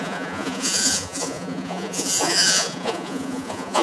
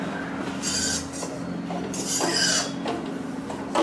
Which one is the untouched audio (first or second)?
second